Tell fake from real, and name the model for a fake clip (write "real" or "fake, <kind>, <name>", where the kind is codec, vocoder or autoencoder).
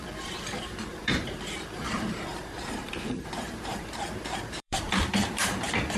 fake, vocoder, BigVGAN v2